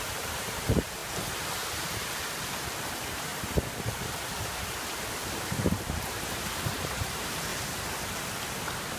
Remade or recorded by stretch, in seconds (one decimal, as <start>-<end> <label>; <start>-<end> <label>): 0.0-1.0 remade; 1.0-2.8 recorded; 2.8-3.3 remade; 3.3-3.9 recorded; 3.9-7.5 remade; 7.5-9.0 recorded